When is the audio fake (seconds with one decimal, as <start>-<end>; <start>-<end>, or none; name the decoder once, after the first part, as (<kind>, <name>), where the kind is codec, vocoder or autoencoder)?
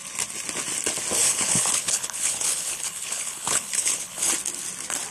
1.2-4.3 (codec, HILCodec)